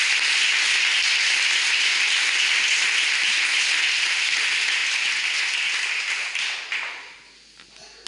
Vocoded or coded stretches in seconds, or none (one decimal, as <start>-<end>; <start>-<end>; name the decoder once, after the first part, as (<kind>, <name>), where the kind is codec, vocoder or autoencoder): none